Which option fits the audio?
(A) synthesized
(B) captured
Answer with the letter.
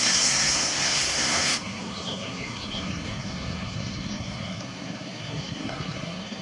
A